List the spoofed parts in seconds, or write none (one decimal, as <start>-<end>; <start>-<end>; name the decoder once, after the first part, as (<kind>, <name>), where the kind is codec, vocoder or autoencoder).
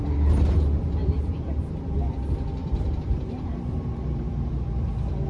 1.0-1.7 (vocoder, BigVGAN v2); 2.6-4.5